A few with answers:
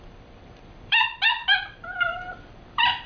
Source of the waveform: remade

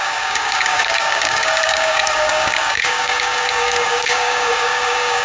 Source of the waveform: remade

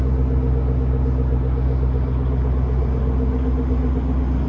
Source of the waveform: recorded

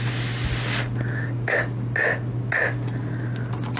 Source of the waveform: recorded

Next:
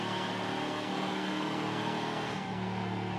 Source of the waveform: remade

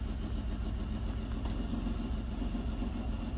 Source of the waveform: recorded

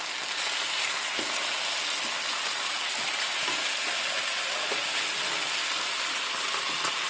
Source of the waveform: recorded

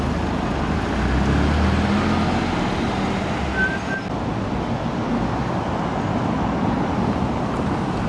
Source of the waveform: recorded